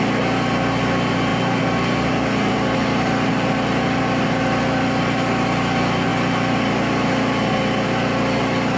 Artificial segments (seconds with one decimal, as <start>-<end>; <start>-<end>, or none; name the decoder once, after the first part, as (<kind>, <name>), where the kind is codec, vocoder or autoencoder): none